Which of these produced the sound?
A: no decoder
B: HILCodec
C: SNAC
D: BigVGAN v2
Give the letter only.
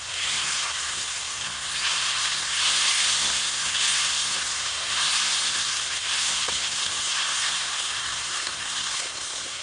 C